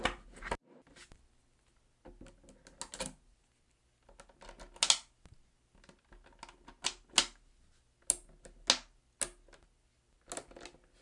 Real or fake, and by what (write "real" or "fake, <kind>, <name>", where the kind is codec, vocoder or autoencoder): real